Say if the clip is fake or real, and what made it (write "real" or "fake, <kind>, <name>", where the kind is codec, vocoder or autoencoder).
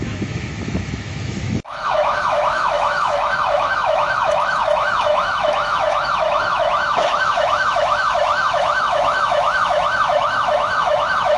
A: fake, autoencoder, DAC-VAE